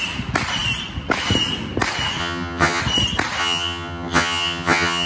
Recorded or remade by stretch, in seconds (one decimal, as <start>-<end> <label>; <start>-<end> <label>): 0.0-2.2 recorded; 2.2-2.8 remade; 2.8-3.4 recorded; 3.4-5.1 remade